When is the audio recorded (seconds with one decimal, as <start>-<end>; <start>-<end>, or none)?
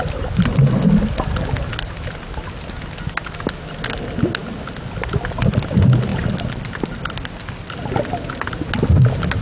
0.0-9.4